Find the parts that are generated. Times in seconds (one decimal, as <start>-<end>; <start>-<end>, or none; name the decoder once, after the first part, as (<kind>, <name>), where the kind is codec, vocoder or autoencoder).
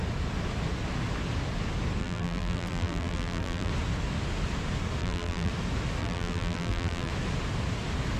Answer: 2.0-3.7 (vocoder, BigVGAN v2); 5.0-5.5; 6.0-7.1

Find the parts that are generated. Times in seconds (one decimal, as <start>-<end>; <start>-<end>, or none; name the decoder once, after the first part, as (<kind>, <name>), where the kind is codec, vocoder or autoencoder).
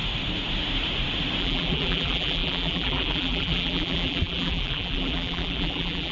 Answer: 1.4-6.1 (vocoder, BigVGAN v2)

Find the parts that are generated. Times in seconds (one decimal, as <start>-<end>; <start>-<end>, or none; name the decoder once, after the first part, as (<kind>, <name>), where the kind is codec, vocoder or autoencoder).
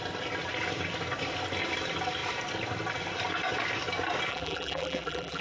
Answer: 4.3-5.4 (vocoder, BigVGAN v2)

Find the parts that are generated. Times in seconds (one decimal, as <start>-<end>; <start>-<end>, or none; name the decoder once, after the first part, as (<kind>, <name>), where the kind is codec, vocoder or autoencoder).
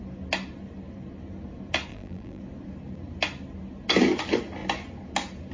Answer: 1.9-2.4 (vocoder, BigVGAN v2)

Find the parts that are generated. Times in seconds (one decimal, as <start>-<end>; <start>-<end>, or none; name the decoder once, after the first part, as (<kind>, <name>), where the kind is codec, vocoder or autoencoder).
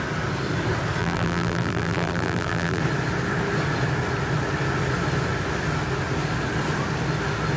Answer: 1.0-2.8 (vocoder, BigVGAN v2)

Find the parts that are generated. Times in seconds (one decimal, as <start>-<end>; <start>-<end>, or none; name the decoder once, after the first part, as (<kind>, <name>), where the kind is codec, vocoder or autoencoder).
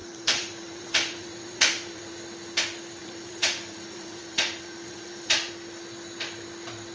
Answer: 0.0-2.1 (vocoder, BigVGAN v2); 3.0-5.5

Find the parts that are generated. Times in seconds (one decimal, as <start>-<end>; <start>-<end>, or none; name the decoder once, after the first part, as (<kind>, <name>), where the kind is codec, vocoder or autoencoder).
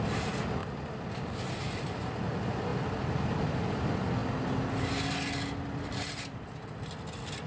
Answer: none